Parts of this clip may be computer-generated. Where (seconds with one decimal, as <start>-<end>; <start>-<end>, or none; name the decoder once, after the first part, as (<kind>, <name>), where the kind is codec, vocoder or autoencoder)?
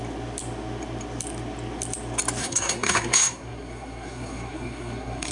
2.4-5.3 (codec, SNAC)